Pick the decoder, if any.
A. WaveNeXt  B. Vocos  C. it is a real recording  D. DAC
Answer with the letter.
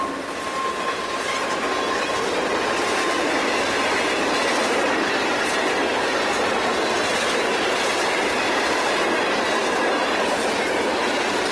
C